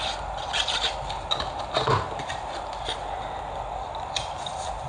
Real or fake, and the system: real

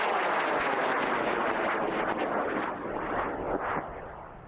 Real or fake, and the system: real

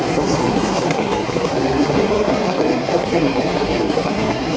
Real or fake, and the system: fake, codec, SNAC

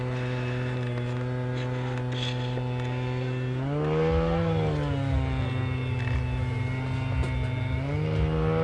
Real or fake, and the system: real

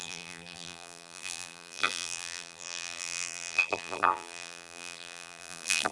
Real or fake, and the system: fake, vocoder, BigVGAN v2